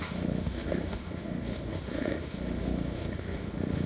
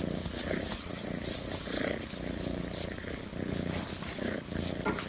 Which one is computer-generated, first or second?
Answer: first